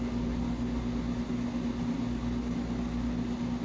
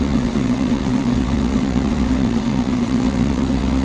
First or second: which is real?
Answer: first